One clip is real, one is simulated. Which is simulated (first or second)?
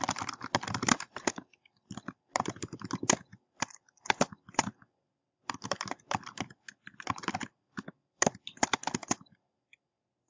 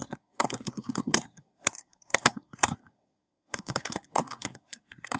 second